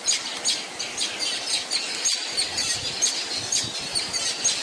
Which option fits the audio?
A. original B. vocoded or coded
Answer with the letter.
A